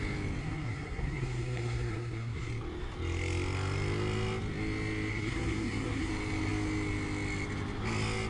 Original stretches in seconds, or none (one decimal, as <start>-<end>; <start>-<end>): 0.0-0.4; 2.5-5.1; 6.1-8.3